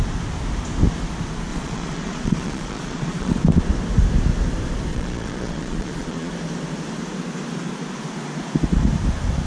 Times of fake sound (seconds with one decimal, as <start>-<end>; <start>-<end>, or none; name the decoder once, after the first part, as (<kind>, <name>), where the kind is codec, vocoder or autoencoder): 1.5-3.3 (vocoder, Vocos); 4.9-6.3